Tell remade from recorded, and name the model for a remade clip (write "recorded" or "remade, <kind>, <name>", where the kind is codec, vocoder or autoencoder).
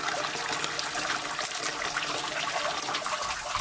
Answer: recorded